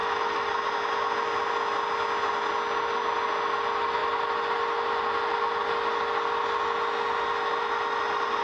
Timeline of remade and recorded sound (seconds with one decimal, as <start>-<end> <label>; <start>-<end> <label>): 0.0-0.5 remade; 0.5-8.4 recorded